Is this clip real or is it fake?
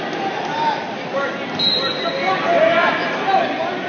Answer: real